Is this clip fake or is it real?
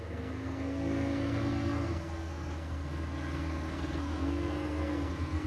fake